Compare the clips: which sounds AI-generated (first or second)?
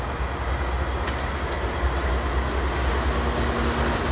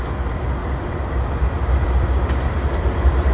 second